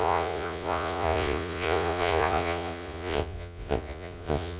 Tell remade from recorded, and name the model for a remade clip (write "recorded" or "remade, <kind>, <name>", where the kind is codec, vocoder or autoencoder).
remade, vocoder, Vocos